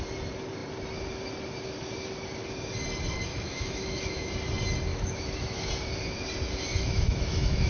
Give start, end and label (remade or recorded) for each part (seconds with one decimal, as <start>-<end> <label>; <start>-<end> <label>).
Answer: 0.0-3.3 recorded; 3.3-4.3 remade; 4.3-4.9 recorded; 4.9-5.7 remade; 5.7-6.7 recorded; 6.7-7.7 remade